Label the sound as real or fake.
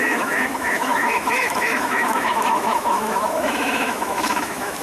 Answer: fake